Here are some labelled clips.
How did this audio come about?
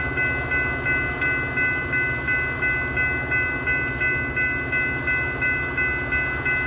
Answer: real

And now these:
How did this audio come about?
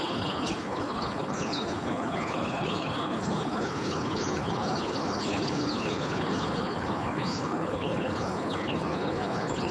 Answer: fake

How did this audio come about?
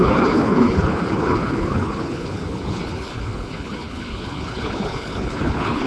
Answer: fake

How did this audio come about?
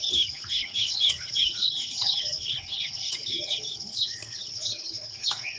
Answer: fake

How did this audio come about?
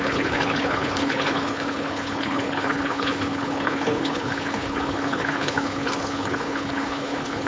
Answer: fake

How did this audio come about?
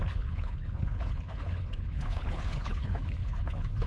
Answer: fake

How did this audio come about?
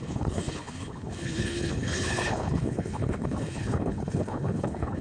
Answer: fake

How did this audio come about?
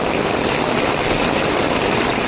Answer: real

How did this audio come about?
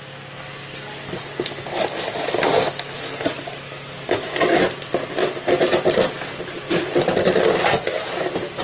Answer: real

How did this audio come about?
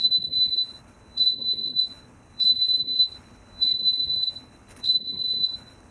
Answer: fake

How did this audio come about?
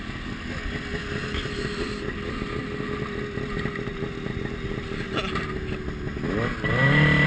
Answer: real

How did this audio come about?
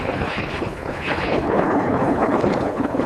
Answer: fake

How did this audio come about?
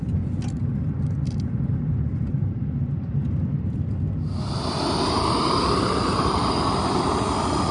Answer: real